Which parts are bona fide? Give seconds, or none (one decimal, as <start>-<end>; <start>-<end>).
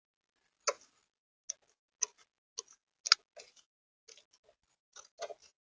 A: 0.0-5.6